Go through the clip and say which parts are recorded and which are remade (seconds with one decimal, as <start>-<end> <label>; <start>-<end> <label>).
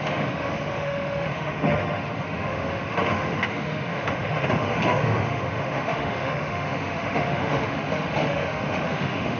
0.0-9.4 remade